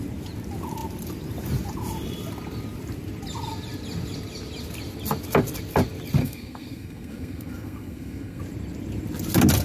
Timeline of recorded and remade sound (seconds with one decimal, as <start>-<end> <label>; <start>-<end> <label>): 0.0-6.2 recorded; 6.2-8.4 remade; 8.4-9.6 recorded